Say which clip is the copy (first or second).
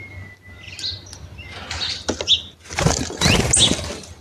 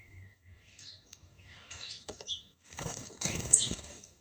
second